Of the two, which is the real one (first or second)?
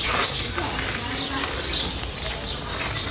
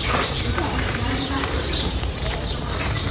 first